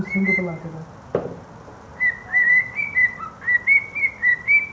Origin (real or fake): real